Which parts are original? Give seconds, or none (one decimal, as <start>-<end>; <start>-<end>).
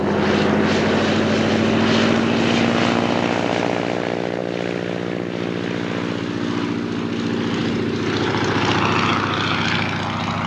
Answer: 0.0-7.6; 8.7-10.5